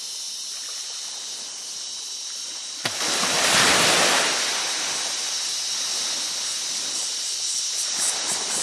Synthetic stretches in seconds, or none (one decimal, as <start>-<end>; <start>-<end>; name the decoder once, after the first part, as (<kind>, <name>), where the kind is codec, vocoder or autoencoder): 7.0-7.6 (vocoder, BigVGAN v2)

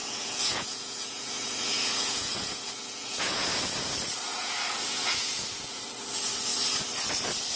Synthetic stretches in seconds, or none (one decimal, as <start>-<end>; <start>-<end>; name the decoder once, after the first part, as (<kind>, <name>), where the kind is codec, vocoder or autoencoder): 0.0-3.9 (vocoder, Vocos); 4.3-5.8